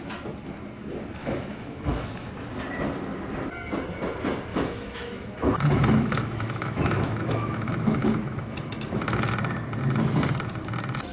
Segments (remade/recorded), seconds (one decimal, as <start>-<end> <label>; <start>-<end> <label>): 0.0-1.2 recorded; 1.2-2.3 remade; 2.3-4.5 recorded; 4.5-9.2 remade; 9.2-11.1 recorded